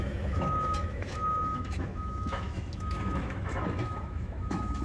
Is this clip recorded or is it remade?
remade